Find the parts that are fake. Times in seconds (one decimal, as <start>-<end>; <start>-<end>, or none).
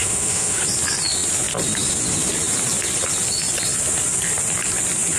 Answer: 0.0-0.6